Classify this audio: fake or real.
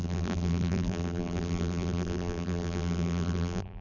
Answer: fake